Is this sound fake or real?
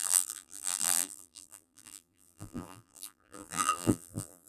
fake